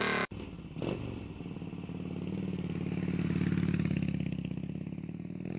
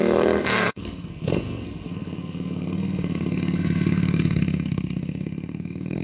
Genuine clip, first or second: first